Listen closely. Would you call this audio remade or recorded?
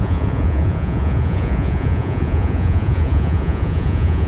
remade